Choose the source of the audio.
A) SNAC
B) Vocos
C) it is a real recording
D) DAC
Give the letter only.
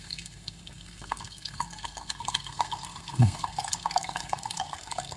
A